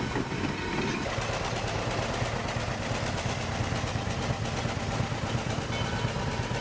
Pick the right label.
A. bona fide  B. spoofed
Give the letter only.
A